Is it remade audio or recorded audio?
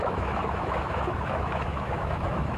remade